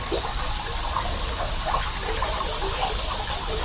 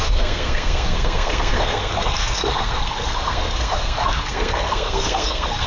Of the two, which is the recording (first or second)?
first